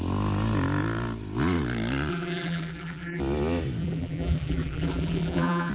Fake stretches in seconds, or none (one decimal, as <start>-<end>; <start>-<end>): 2.1-3.2; 3.8-5.7